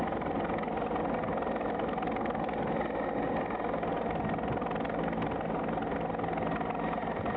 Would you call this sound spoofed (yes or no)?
no